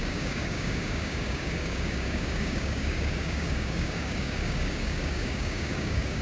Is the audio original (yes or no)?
no